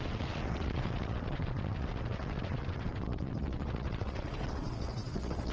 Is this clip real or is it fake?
fake